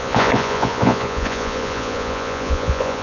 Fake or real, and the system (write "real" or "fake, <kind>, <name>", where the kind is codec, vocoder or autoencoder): fake, vocoder, Vocos